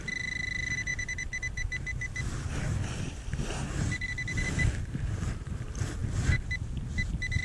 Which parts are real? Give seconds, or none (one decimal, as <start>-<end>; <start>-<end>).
6.0-6.6